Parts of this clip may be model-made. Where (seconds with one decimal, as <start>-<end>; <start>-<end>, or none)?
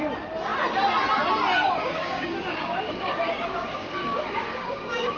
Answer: 1.8-5.2